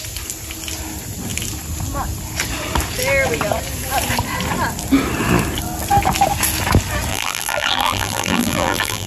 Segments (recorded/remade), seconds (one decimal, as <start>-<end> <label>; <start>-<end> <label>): 0.0-7.1 recorded; 7.1-9.1 remade